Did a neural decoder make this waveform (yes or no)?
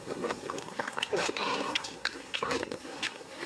yes